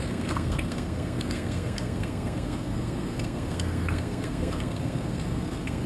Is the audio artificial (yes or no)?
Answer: yes